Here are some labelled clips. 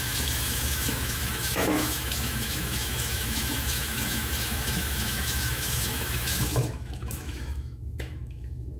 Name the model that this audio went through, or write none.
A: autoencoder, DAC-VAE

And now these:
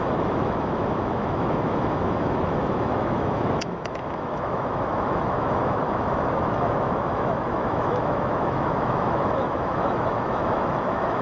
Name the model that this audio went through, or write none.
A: autoencoder, DAC-VAE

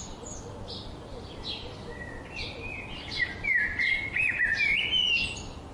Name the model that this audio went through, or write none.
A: none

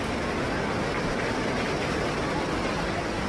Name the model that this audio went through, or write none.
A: none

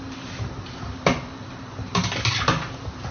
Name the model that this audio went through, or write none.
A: none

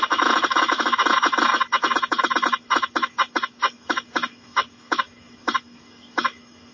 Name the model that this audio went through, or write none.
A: autoencoder, DAC-VAE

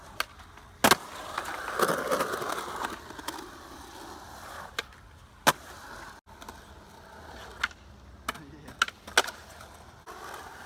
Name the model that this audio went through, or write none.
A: none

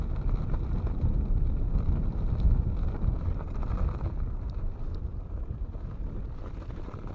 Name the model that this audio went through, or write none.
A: none